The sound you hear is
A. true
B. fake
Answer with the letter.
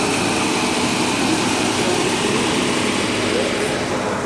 A